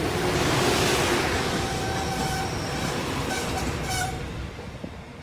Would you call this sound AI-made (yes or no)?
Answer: no